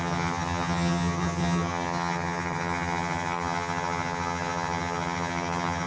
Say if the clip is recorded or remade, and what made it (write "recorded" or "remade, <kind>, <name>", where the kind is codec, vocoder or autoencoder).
remade, vocoder, HiFi-GAN